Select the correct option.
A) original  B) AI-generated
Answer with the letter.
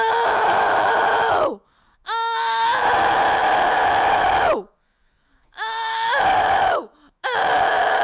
B